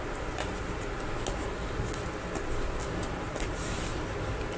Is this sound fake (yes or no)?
no